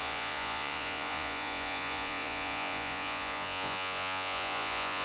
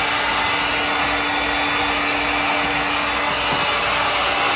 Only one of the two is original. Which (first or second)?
second